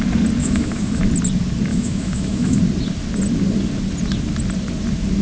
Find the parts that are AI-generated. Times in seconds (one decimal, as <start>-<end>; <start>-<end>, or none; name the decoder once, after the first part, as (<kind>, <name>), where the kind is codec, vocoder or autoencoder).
0.4-1.0 (autoencoder, DAC-VAE); 1.7-2.6